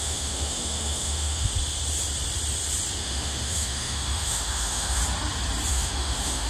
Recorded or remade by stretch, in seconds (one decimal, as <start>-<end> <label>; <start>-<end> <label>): 0.0-1.5 remade; 1.5-3.0 recorded; 3.0-5.0 remade; 5.0-5.7 recorded; 5.7-6.5 remade